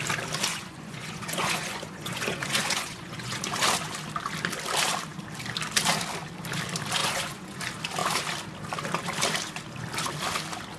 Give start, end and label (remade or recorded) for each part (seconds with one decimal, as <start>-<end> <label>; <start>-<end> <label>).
0.0-0.5 recorded; 0.5-3.4 remade; 3.4-7.0 recorded; 7.0-7.6 remade; 7.6-10.8 recorded